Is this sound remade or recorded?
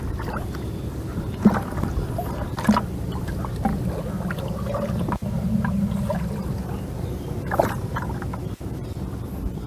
recorded